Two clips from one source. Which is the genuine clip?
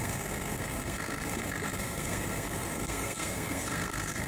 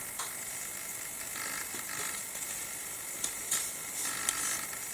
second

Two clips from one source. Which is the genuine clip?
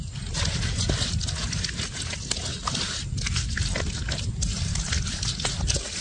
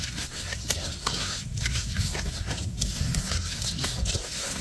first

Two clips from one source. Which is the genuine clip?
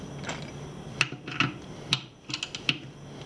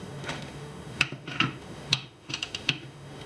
first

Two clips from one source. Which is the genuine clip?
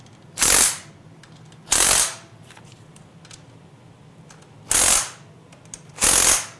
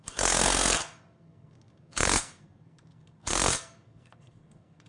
first